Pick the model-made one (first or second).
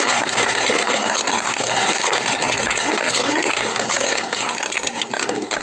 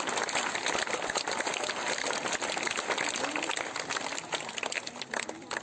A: first